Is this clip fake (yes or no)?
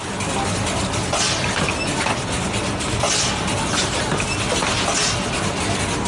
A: no